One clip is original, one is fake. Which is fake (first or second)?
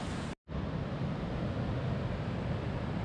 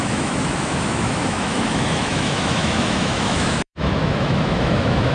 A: second